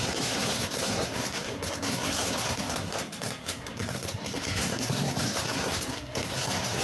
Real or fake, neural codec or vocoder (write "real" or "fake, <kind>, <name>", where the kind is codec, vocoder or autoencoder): fake, codec, SNAC